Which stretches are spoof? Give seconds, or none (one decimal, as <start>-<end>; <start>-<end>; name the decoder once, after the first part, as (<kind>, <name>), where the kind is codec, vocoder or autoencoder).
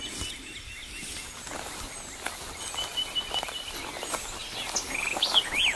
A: none